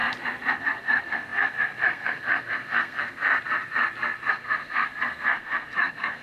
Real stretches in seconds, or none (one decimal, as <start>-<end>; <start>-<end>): 0.0-0.5; 3.3-4.3